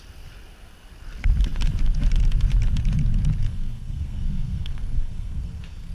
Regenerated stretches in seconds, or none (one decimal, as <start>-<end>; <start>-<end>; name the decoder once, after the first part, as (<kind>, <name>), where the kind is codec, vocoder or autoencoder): 3.4-5.9 (codec, SNAC)